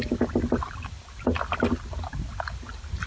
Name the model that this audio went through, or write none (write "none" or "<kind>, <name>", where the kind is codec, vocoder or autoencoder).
none